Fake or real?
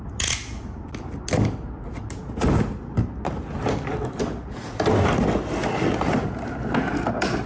real